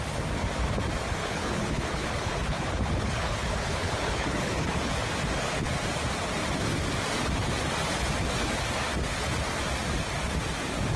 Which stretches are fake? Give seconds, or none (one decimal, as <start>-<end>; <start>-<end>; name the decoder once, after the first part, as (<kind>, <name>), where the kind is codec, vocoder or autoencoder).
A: 1.2-4.9 (codec, HILCodec)